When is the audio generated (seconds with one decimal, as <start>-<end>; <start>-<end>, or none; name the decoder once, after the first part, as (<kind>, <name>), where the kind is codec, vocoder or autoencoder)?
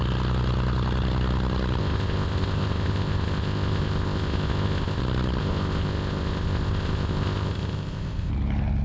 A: 1.8-5.0 (codec, ZipCodec); 5.4-8.3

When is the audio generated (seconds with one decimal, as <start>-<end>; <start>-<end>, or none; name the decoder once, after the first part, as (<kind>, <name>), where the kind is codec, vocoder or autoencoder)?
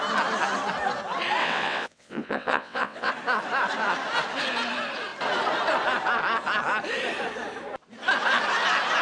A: 1.4-3.1 (vocoder, WaveNeXt)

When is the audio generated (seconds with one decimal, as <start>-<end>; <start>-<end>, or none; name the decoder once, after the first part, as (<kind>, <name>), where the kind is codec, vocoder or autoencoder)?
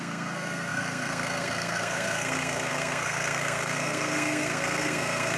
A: 0.0-5.4 (codec, SNAC)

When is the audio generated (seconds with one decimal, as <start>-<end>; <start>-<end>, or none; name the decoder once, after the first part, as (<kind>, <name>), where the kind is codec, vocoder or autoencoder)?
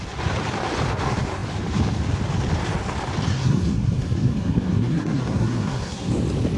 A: 3.3-6.1 (codec, SNAC)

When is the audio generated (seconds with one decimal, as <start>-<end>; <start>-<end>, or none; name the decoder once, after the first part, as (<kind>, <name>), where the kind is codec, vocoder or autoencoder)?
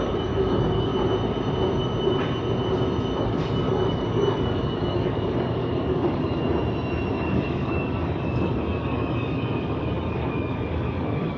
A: 0.0-0.9 (codec, DAC); 3.2-6.4; 7.1-11.4